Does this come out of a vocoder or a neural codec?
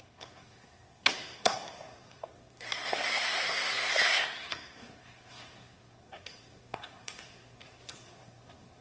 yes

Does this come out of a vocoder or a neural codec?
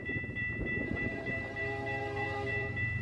yes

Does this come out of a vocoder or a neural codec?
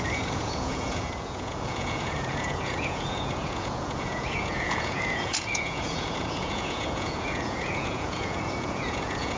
yes